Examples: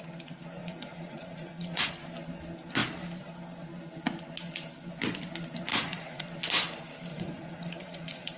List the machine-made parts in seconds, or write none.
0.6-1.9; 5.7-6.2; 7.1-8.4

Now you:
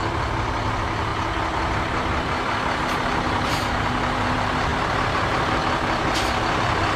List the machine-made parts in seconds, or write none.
none

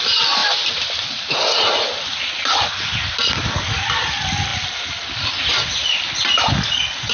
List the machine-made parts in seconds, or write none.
none